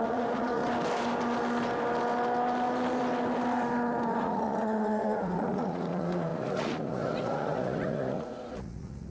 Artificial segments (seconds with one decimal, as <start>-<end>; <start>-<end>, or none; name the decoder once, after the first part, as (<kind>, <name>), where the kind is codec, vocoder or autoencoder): 0.0-0.6 (vocoder, Vocos); 4.2-9.1